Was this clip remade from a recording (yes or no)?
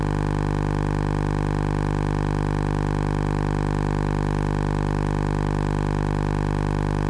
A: no